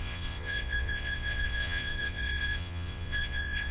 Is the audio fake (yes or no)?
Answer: yes